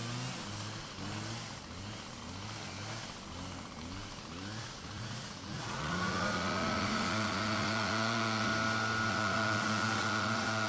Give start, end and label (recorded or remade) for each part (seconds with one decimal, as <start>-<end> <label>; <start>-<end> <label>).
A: 0.0-4.6 recorded; 4.6-8.5 remade; 8.5-9.1 recorded; 9.1-10.7 remade